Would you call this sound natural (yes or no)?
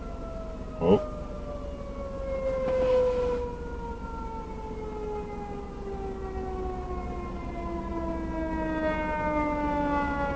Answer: yes